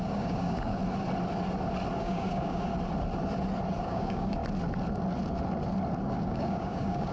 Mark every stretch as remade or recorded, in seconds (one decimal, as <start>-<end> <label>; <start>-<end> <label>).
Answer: 0.0-0.8 remade; 0.8-2.0 recorded; 2.0-2.7 remade; 2.7-3.8 recorded; 3.8-4.4 remade; 4.4-6.0 recorded; 6.0-7.1 remade